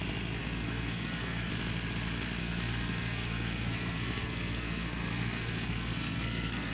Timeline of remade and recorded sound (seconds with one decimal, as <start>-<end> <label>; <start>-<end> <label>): 0.0-0.4 recorded; 0.4-1.5 remade; 1.5-2.4 recorded; 2.4-6.7 remade

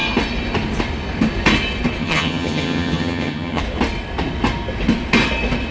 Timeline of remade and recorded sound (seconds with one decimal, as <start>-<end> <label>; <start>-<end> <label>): 0.0-2.0 recorded; 2.0-3.6 remade; 3.6-5.7 recorded

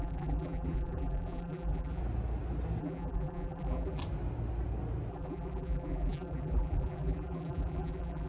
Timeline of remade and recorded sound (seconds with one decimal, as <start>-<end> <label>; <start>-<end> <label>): 0.0-2.0 remade; 2.0-2.8 recorded; 2.8-4.0 remade; 4.0-5.1 recorded; 5.1-8.3 remade

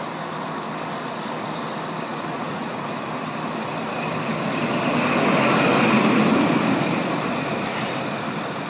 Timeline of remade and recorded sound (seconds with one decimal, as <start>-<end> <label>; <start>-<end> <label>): 0.0-2.1 recorded; 2.1-2.9 remade; 2.9-8.7 recorded

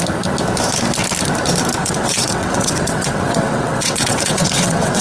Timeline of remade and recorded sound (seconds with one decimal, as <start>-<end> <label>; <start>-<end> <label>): 0.0-1.8 recorded; 1.8-5.0 remade

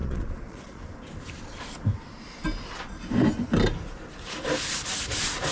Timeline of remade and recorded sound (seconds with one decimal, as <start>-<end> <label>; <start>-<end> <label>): 0.0-0.8 remade; 0.8-5.5 recorded

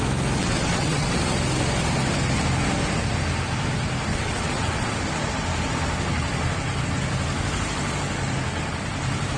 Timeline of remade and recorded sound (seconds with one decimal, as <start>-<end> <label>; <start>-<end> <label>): 0.0-0.4 recorded; 0.4-1.2 remade; 1.2-4.1 recorded; 4.1-5.0 remade; 5.0-9.4 recorded

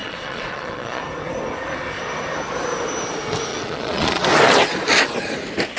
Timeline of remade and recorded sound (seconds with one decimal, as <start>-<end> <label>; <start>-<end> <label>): 0.0-1.0 remade; 1.0-3.5 recorded; 3.5-4.2 remade; 4.2-5.8 recorded